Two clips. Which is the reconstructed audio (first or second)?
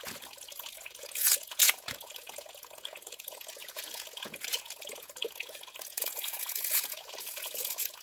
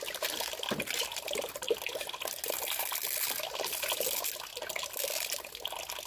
first